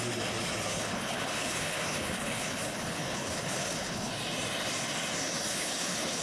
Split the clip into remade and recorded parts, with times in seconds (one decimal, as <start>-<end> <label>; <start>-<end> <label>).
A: 0.0-0.7 recorded; 0.7-4.1 remade; 4.1-5.5 recorded; 5.5-6.2 remade